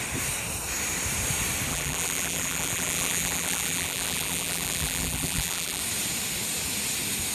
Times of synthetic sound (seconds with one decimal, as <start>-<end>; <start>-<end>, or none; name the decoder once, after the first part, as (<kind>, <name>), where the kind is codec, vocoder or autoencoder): 1.7-5.8 (vocoder, BigVGAN v2)